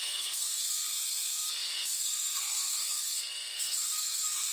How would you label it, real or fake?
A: fake